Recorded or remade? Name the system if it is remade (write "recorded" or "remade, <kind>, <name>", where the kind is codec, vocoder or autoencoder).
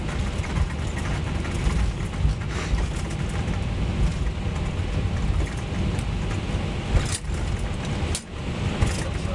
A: recorded